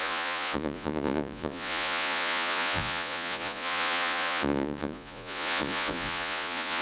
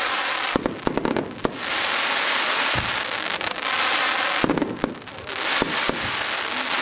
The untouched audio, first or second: second